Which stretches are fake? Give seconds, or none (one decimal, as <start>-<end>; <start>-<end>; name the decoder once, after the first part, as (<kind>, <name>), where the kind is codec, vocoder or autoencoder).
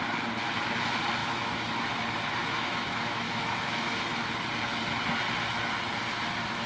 1.2-1.9 (autoencoder, DAC-VAE); 2.4-4.0